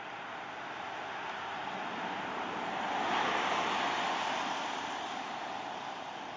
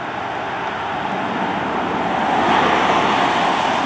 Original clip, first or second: second